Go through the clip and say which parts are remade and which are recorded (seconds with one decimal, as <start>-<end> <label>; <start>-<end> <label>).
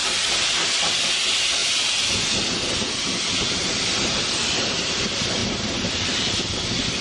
0.0-1.6 remade; 1.6-3.5 recorded; 3.5-5.4 remade; 5.4-5.9 recorded; 5.9-7.0 remade